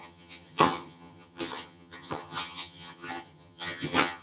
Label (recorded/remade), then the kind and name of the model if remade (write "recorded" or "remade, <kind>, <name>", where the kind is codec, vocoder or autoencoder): remade, vocoder, HiFi-GAN